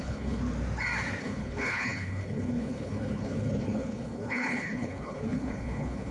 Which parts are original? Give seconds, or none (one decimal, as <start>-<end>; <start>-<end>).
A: 0.4-1.2